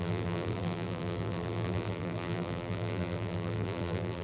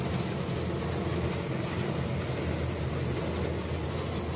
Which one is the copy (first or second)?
first